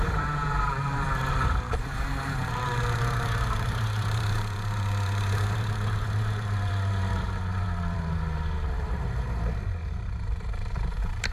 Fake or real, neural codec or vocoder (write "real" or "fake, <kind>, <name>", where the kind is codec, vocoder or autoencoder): fake, vocoder, BigVGAN v2